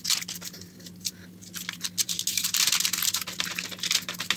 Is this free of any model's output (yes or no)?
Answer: yes